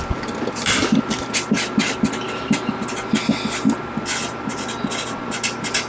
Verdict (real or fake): real